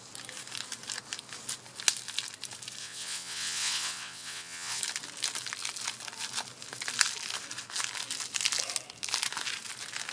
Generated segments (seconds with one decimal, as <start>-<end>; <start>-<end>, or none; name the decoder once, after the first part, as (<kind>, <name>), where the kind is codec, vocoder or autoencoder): 2.8-4.8 (vocoder, WaveNeXt)